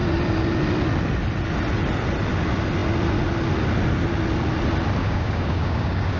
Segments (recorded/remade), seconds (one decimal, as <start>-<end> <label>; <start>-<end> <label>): 0.0-5.0 recorded; 5.0-6.2 remade